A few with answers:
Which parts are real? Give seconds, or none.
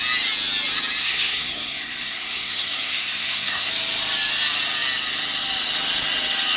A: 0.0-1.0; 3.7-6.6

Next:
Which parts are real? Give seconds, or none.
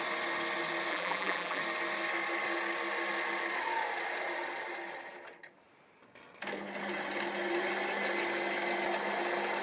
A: 0.0-0.9; 1.6-9.6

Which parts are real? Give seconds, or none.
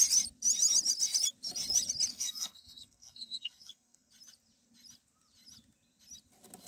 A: 0.0-2.1; 4.1-6.7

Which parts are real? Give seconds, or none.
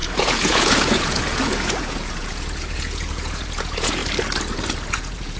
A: 4.0-4.5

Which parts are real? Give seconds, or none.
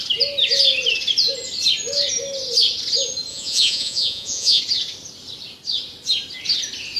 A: 0.0-3.3; 4.6-7.0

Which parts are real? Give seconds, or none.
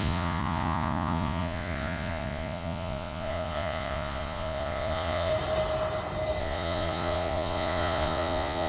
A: 5.3-6.4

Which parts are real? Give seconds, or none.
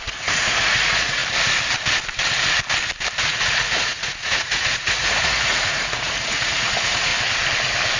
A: 1.2-3.2; 7.1-8.0